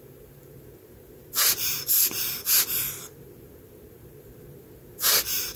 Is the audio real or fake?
fake